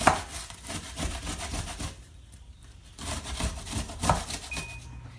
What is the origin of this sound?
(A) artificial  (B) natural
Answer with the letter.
B